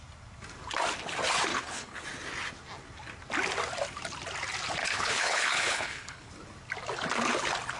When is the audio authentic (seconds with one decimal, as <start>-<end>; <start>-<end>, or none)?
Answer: 0.0-1.5; 2.0-4.8; 6.3-7.8